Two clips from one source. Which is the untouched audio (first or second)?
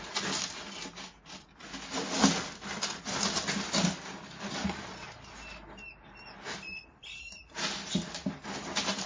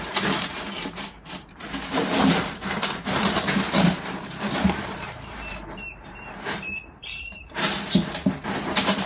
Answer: first